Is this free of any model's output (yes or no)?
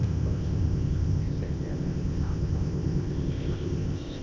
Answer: no